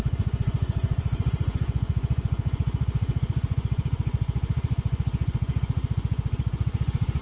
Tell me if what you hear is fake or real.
fake